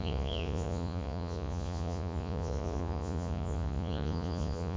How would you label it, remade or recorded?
remade